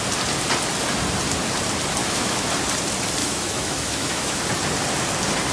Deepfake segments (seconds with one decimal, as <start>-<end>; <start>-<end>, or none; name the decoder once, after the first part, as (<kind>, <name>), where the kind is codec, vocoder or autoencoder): 2.0-2.5 (autoencoder, DAC-VAE); 3.2-4.4